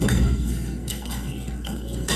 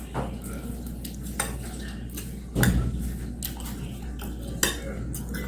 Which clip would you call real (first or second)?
second